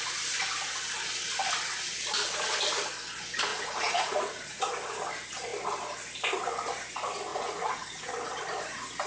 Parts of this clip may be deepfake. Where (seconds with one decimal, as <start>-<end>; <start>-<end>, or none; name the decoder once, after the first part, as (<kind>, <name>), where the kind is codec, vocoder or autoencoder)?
3.5-4.7 (vocoder, Vocos); 7.3-8.1